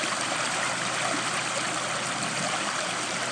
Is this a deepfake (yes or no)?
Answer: no